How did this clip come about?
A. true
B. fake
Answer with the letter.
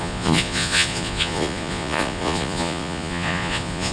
B